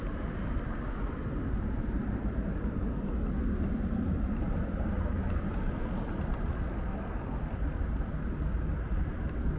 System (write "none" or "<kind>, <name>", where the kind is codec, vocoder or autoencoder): none